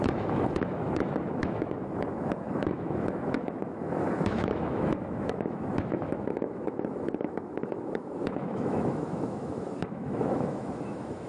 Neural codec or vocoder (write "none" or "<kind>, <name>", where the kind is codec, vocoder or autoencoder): autoencoder, DAC-VAE